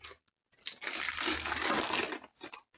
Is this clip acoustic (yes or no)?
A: yes